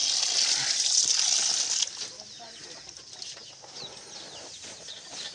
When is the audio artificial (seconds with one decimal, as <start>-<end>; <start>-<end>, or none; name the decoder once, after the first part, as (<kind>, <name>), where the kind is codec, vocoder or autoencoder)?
none